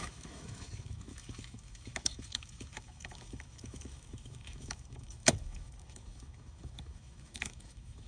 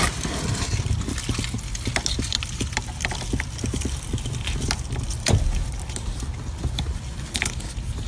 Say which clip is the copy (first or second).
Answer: first